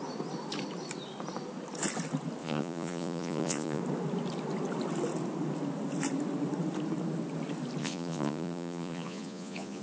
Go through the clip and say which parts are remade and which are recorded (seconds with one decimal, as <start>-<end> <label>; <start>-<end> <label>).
0.0-2.4 recorded; 2.4-3.8 remade; 3.8-7.8 recorded; 7.8-9.8 remade